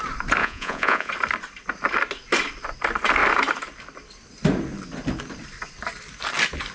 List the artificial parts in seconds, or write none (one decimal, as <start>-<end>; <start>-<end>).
0.4-1.1